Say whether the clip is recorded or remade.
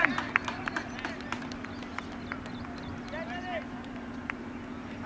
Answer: recorded